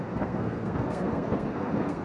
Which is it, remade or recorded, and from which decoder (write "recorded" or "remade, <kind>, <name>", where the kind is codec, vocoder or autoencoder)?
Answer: remade, codec, SNAC